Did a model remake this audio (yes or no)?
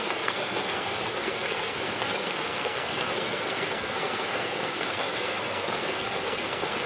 yes